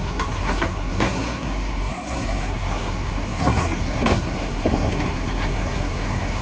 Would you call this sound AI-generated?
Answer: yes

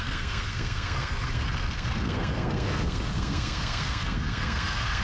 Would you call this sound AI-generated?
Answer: yes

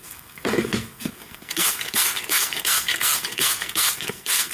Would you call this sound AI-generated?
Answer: yes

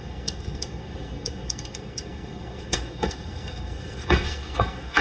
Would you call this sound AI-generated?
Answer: yes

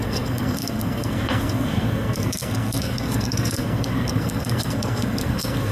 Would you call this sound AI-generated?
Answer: yes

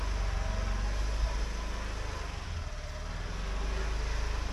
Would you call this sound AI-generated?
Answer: no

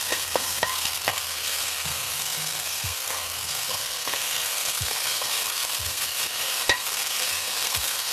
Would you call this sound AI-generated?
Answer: yes